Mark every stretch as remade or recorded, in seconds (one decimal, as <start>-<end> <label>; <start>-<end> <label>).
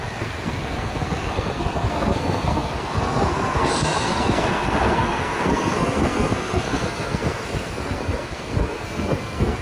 0.0-9.6 remade